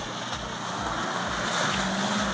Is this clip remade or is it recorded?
recorded